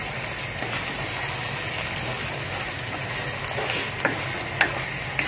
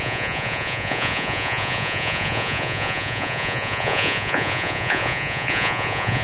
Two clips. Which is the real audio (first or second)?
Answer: first